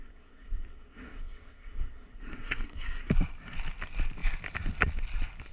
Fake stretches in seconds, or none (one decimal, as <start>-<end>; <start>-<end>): 0.0-3.1

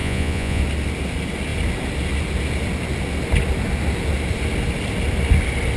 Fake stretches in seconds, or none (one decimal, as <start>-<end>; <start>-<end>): 0.0-0.6